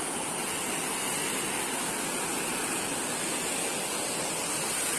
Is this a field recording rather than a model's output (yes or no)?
yes